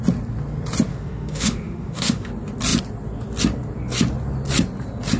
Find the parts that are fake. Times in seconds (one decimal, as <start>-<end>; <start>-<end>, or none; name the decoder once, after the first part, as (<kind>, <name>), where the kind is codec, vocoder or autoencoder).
0.9-2.3 (autoencoder, DAC-VAE)